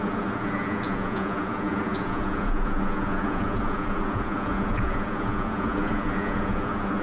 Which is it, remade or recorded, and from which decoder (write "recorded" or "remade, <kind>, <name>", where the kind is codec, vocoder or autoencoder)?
remade, vocoder, Vocos